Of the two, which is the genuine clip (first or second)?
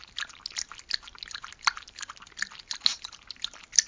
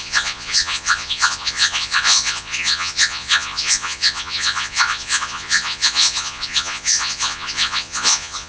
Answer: first